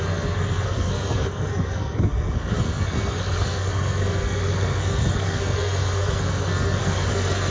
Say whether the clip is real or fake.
fake